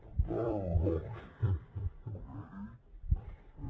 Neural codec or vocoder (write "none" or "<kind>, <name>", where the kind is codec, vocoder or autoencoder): vocoder, BigVGAN v2